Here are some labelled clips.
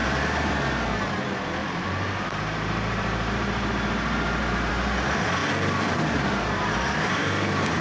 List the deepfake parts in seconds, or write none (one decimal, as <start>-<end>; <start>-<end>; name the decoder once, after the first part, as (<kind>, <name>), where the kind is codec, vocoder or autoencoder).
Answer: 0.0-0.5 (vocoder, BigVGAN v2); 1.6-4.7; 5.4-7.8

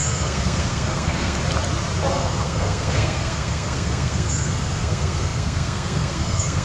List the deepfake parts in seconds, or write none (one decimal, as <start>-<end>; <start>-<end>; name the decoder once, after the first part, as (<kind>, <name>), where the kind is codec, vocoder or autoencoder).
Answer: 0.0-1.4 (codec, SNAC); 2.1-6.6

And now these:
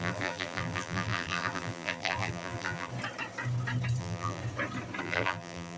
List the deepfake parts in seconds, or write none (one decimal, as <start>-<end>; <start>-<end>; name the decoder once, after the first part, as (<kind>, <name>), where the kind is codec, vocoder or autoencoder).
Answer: 0.0-2.9 (vocoder, BigVGAN v2); 4.0-4.4; 5.0-5.8

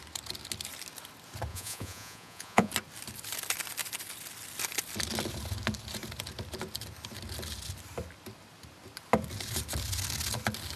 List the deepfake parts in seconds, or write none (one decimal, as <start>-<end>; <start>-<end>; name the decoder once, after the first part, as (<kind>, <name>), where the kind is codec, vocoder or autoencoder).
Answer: 1.5-2.7 (vocoder, Vocos)

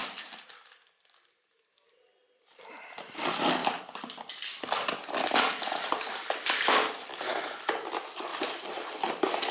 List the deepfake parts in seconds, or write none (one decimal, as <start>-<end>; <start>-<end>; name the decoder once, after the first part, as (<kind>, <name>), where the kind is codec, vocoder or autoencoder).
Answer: 0.0-0.6 (vocoder, BigVGAN v2); 3.6-6.9; 8.3-9.1